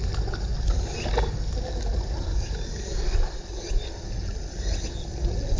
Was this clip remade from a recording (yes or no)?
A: no